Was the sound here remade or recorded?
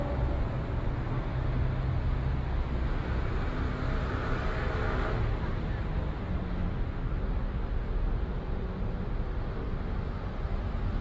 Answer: recorded